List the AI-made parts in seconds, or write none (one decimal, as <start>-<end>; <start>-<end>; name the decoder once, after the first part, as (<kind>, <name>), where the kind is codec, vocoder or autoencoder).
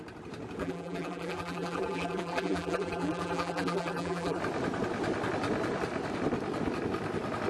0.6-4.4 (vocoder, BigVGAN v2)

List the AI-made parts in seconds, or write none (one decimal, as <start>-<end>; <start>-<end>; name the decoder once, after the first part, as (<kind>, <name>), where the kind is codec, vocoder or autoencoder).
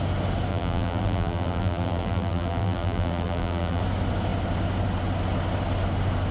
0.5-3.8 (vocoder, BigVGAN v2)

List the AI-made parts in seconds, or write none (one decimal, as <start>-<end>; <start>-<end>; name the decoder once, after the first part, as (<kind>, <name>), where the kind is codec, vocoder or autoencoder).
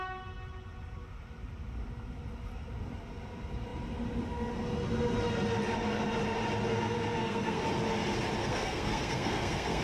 6.7-7.6 (codec, SNAC); 8.4-9.8